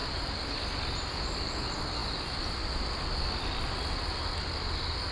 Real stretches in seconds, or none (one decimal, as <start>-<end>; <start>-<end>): 0.0-5.1